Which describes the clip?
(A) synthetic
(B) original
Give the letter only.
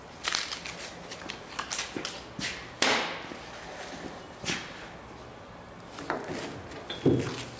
B